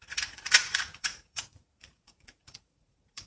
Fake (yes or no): yes